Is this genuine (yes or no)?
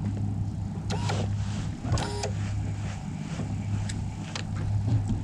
yes